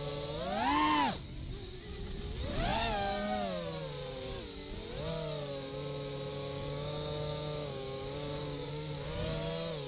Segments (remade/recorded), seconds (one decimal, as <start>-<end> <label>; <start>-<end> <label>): 0.0-6.3 recorded; 6.3-8.7 remade; 8.7-9.9 recorded